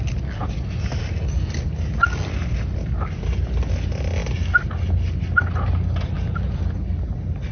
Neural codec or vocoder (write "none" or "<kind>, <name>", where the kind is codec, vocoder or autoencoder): none